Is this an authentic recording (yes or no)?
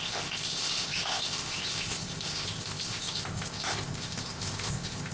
no